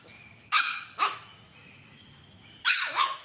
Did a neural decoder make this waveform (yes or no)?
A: yes